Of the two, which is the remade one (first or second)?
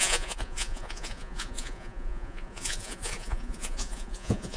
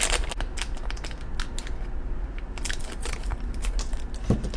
first